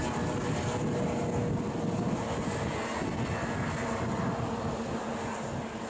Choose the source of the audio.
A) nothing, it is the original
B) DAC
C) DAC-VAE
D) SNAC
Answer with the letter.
A